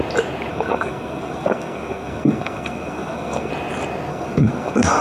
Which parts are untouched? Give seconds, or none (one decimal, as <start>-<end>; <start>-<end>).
0.0-0.5; 3.5-4.1